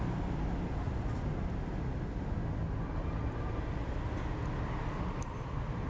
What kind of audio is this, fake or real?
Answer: real